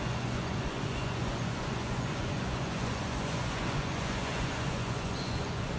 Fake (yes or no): yes